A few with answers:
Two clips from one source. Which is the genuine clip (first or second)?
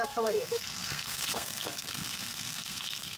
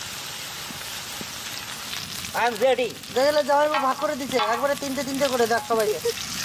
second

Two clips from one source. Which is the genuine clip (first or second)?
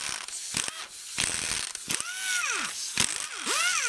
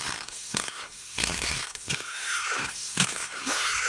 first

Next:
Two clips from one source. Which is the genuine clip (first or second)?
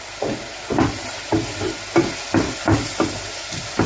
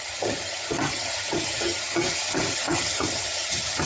first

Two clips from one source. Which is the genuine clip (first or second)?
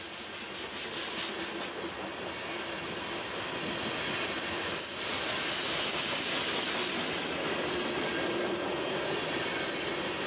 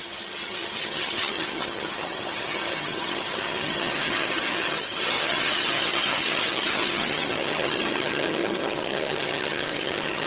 first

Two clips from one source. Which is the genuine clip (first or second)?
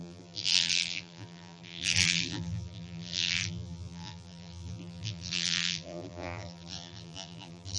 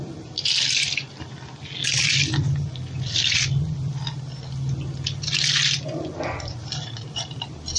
second